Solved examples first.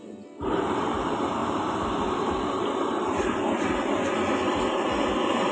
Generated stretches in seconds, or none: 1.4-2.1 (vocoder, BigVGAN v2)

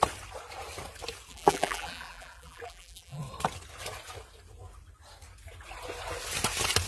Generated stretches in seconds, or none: 1.3-3.2 (vocoder, BigVGAN v2)

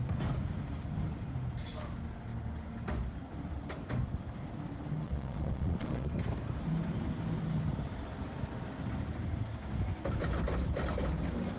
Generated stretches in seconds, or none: 5.0-6.1 (vocoder, Vocos)

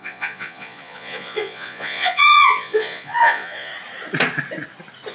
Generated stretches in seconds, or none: 0.0-3.7 (vocoder, Vocos)

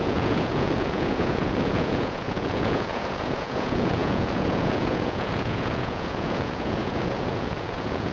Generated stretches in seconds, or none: 0.0-8.1 (vocoder, Vocos)

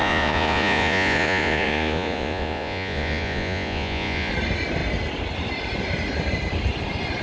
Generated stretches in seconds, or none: 0.0-4.3 (vocoder, Vocos)